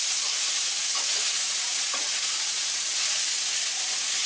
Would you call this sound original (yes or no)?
no